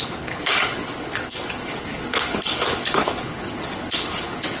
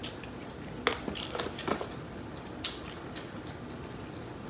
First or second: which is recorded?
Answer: second